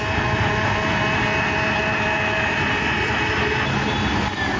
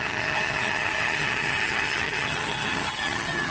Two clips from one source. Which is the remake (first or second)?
second